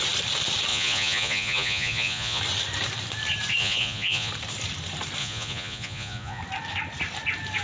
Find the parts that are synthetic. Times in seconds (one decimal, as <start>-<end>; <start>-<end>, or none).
0.7-2.4; 3.6-4.3; 5.2-6.4